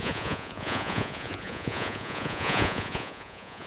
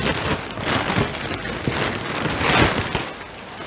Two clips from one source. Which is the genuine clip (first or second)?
second